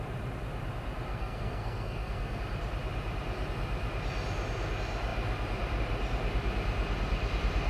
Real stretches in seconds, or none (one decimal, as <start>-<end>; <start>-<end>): 0.0-1.1; 2.4-7.7